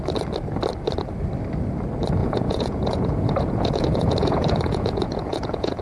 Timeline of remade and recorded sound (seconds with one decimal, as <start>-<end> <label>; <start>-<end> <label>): 0.0-2.2 recorded; 2.2-5.8 remade